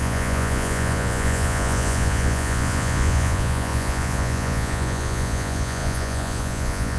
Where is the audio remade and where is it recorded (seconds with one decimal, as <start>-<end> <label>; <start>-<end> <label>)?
0.0-7.0 remade

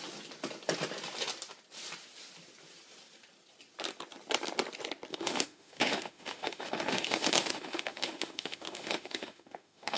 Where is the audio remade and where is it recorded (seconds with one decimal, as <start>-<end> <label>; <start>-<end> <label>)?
0.0-5.1 recorded; 5.1-10.0 remade

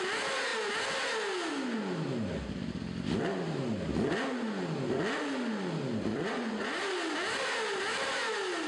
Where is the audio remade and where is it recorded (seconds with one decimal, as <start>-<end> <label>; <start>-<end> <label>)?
0.0-6.1 recorded; 6.1-6.8 remade; 6.8-8.7 recorded

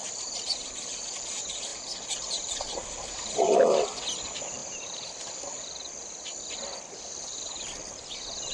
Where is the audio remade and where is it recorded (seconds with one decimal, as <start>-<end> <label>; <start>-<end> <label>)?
0.0-4.6 recorded; 4.6-5.1 remade; 5.1-8.5 recorded

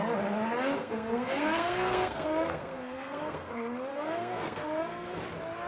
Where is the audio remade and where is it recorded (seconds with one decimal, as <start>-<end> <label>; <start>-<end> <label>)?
0.0-0.8 recorded; 0.8-3.5 remade; 3.5-3.9 recorded; 3.9-5.2 remade; 5.2-5.7 recorded

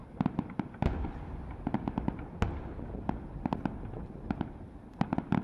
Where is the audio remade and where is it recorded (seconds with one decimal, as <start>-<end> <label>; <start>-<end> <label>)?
0.0-5.4 recorded

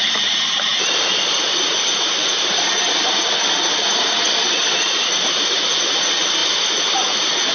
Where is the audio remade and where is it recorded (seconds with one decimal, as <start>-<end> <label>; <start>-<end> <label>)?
0.0-7.5 recorded

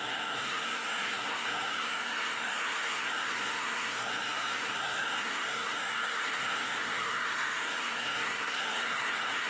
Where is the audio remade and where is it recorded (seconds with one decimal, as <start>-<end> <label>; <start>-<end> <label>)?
0.0-9.5 remade